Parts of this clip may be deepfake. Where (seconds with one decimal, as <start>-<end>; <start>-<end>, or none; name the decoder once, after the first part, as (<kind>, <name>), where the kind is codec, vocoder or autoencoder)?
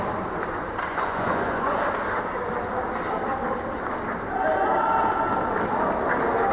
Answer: 0.9-1.8 (vocoder, Vocos)